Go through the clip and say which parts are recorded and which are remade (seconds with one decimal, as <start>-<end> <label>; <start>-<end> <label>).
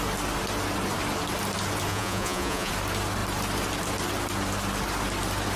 0.0-1.9 recorded; 1.9-2.7 remade; 2.7-5.6 recorded